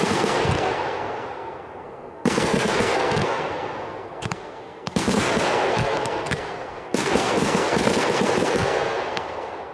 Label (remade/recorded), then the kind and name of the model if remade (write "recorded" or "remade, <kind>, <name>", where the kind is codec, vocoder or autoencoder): remade, codec, SNAC